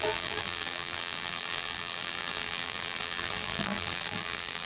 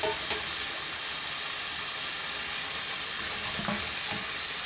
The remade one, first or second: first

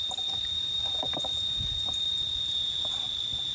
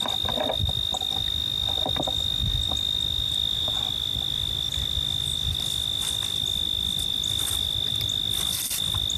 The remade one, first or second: first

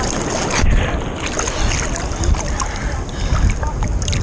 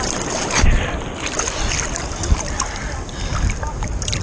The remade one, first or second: second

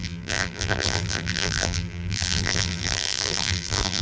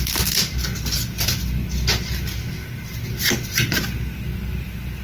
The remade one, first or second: first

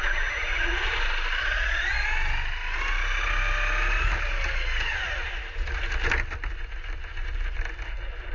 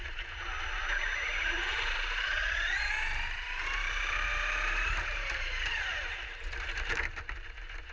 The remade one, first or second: second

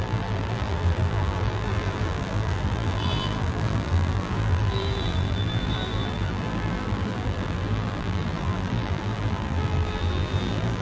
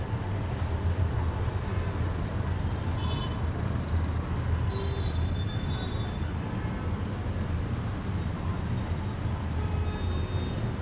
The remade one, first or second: first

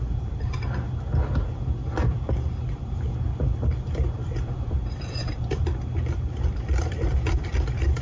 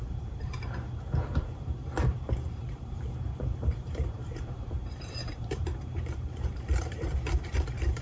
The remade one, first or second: second